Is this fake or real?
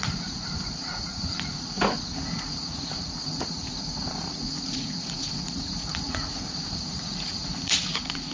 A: fake